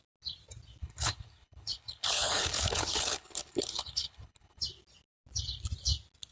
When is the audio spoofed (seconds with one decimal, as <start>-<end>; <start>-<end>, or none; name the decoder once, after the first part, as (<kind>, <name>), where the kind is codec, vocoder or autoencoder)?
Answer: 0.8-4.6 (codec, HILCodec)